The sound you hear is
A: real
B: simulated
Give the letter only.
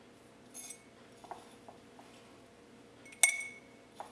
A